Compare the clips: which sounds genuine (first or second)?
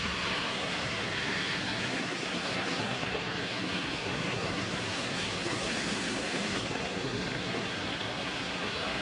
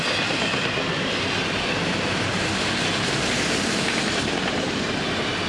second